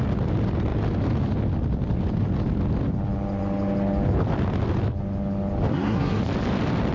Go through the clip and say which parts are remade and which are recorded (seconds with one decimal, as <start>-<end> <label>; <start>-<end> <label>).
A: 0.0-5.7 recorded; 5.7-6.2 remade; 6.2-6.9 recorded